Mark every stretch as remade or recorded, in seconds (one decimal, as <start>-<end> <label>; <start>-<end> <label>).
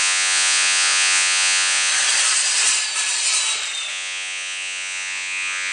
0.0-1.9 remade; 1.9-3.9 recorded; 3.9-5.7 remade